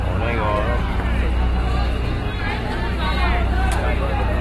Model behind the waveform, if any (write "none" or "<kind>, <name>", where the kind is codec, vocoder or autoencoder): none